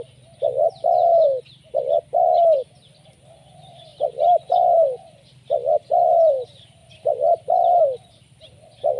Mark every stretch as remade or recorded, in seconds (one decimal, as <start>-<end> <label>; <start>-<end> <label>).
0.0-6.8 recorded; 6.8-7.8 remade; 7.8-9.0 recorded